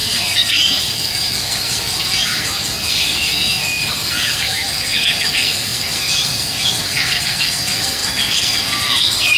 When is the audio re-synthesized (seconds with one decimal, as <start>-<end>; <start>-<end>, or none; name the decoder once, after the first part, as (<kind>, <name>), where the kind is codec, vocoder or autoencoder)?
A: 0.0-9.4 (codec, SNAC)